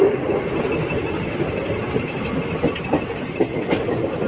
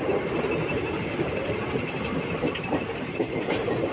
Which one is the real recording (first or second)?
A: first